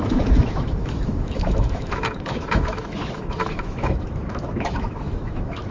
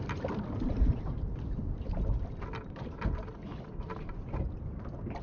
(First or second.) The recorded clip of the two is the second